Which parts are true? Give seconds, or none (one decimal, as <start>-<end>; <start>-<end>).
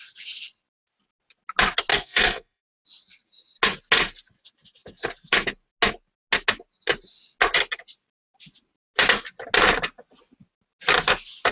0.0-1.9; 2.6-11.5